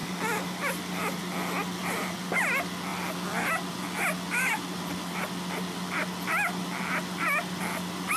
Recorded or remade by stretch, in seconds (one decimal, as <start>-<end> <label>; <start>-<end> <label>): 0.0-1.2 remade; 1.2-1.8 recorded; 1.8-2.5 remade; 2.5-8.2 recorded